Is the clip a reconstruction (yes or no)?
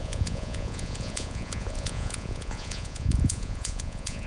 yes